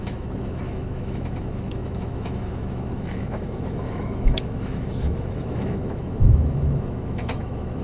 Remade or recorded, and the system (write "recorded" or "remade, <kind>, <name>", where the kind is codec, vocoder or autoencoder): remade, autoencoder, DAC-VAE